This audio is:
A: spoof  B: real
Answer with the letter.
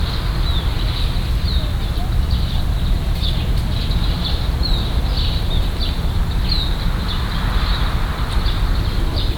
B